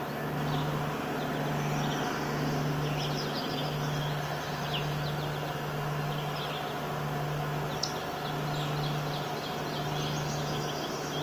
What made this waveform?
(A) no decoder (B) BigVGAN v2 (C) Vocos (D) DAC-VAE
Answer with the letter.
A